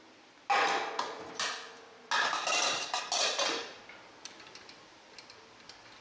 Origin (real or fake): real